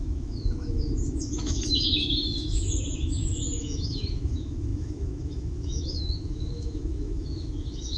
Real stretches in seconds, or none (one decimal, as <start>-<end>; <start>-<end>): none

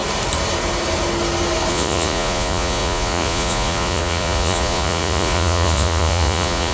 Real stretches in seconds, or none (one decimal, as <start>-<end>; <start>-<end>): 0.0-1.7

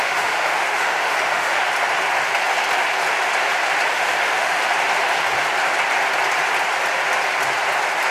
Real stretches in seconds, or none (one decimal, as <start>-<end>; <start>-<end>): 1.6-3.9; 4.6-8.1